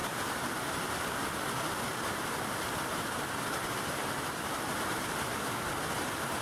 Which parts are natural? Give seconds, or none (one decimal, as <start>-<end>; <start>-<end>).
1.0-1.9; 5.7-6.4